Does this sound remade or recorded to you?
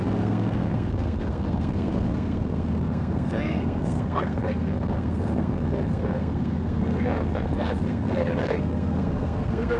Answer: remade